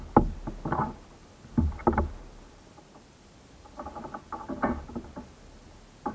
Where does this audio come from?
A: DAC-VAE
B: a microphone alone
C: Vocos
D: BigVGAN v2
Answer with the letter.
B